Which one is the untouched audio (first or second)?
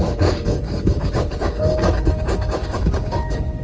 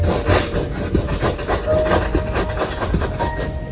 second